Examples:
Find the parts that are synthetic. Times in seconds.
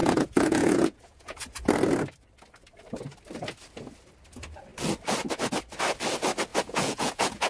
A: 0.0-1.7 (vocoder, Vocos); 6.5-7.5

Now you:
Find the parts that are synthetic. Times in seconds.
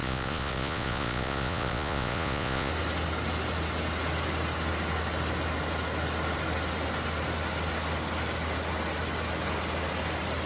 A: 0.0-2.7 (vocoder, Vocos)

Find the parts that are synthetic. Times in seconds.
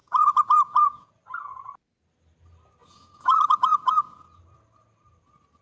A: 0.0-1.1 (vocoder, Vocos); 2.8-4.4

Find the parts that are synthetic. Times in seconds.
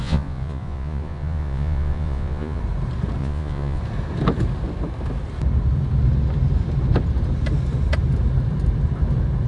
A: 0.0-2.6 (vocoder, Vocos); 3.2-3.8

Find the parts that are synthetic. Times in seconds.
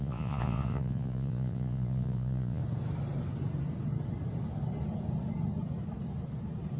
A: 0.0-2.6 (vocoder, Vocos)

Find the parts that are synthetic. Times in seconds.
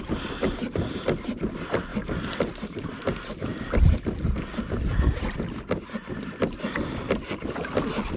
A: none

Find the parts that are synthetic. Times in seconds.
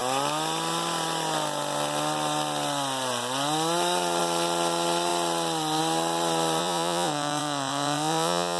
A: 6.6-8.6 (vocoder, Vocos)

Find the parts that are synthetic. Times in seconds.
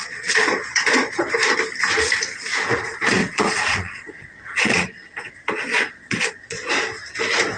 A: 0.0-1.3 (vocoder, Vocos); 3.2-6.7